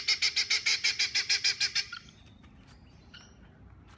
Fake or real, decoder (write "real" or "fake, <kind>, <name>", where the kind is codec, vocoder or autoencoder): real